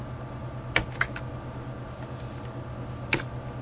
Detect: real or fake real